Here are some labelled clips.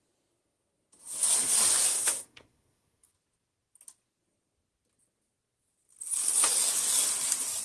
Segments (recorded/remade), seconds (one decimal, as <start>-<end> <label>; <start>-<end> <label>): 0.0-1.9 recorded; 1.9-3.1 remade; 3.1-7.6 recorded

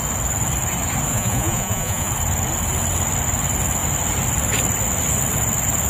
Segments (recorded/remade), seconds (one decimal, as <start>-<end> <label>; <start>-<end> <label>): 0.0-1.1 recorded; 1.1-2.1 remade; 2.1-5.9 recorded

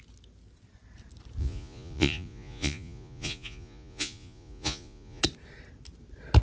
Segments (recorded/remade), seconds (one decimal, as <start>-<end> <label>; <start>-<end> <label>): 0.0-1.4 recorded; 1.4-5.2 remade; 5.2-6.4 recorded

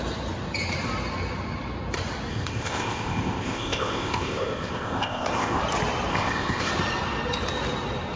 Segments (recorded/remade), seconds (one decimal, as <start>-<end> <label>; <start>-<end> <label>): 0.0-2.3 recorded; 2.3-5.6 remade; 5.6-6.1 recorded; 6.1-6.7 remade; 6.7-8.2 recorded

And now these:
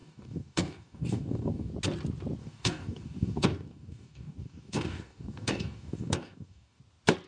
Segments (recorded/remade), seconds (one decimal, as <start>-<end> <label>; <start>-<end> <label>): 0.0-1.7 remade; 1.7-2.4 recorded; 2.4-6.8 remade; 6.8-7.3 recorded

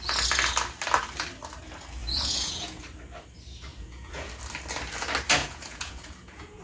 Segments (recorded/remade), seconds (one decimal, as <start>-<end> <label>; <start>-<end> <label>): 0.0-2.0 recorded; 2.0-2.8 remade; 2.8-3.7 recorded; 3.7-4.3 remade; 4.3-5.4 recorded; 5.4-6.6 remade

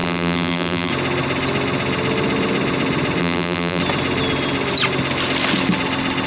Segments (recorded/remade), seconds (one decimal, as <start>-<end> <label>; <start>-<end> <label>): 0.0-0.9 remade; 0.9-3.2 recorded; 3.2-3.8 remade; 3.8-6.3 recorded